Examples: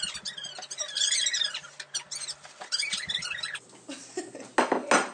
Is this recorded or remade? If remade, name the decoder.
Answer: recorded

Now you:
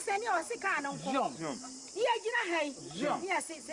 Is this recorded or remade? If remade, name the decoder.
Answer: recorded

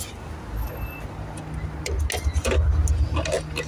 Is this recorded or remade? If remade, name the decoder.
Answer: recorded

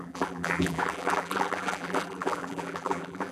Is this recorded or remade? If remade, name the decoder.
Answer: remade, vocoder, BigVGAN v2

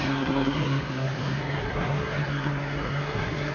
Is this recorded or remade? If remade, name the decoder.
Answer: remade, codec, SNAC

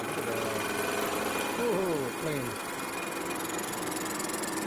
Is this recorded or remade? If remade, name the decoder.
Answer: recorded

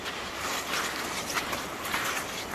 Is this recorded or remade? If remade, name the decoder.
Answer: recorded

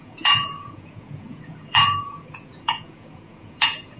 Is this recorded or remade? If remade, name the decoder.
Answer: remade, vocoder, Vocos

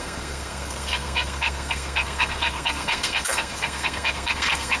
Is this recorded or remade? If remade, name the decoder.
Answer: remade, codec, SNAC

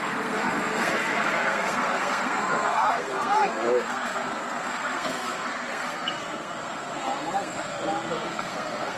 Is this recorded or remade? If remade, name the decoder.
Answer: remade, codec, SNAC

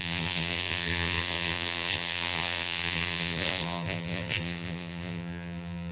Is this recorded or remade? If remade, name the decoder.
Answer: remade, vocoder, BigVGAN v2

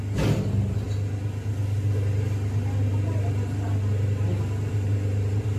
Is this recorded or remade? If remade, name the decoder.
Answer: recorded